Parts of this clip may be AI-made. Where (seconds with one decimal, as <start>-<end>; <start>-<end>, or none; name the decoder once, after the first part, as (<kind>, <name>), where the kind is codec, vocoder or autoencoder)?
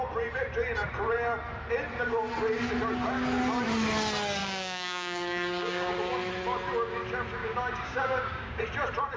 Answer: 4.4-5.9 (codec, DAC); 7.4-8.6